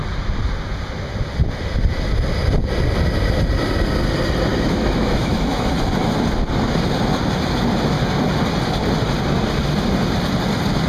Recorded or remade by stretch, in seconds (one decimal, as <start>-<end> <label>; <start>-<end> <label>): 0.0-4.5 recorded; 4.5-5.7 remade; 5.7-10.9 recorded